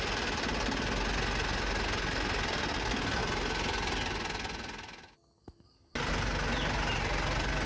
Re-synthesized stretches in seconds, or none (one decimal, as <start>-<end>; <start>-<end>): none